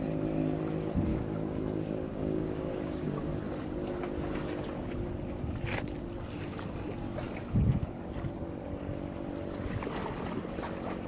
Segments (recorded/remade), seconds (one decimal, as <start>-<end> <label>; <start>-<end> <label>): 0.0-1.1 recorded; 1.1-3.3 remade; 3.3-11.1 recorded